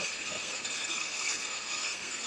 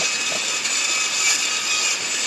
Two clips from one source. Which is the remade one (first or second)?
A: first